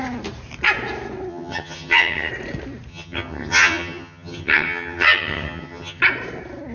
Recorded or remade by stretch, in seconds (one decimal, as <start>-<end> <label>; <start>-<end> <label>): 0.0-1.3 recorded; 1.3-2.3 remade; 2.3-2.9 recorded; 2.9-6.0 remade; 6.0-6.7 recorded